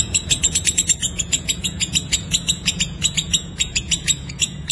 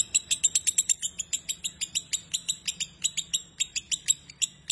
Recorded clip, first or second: second